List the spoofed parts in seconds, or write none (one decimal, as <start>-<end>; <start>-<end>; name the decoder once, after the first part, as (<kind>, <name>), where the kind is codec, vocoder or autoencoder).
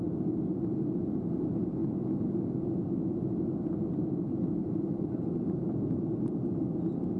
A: none